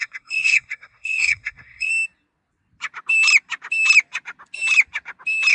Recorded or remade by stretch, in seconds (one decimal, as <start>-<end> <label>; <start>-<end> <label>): 0.0-1.9 remade; 1.9-5.5 recorded